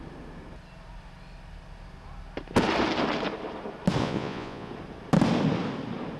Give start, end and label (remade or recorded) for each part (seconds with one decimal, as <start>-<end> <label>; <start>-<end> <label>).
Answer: 0.0-4.0 recorded; 4.0-4.7 remade; 4.7-6.2 recorded